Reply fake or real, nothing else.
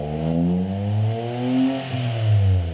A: real